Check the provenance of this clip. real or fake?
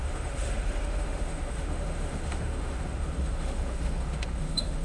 fake